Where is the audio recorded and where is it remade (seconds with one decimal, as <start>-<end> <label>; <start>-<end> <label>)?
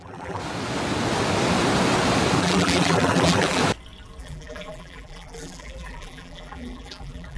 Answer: 0.0-0.4 remade; 0.4-2.4 recorded; 2.4-3.6 remade; 3.6-4.2 recorded; 4.2-7.4 remade